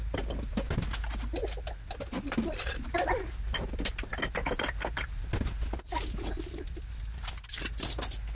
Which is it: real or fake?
real